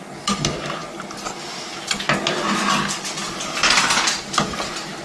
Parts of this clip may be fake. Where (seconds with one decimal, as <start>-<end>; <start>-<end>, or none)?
none